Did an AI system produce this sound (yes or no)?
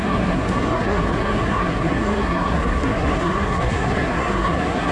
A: yes